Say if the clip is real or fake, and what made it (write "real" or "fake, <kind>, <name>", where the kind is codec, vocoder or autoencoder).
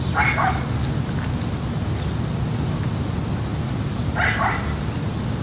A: real